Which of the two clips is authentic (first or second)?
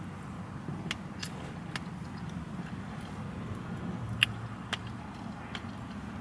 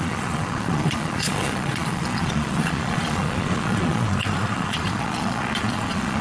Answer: first